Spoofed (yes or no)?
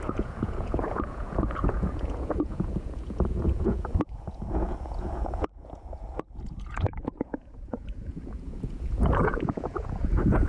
yes